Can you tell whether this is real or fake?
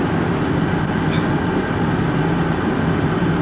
real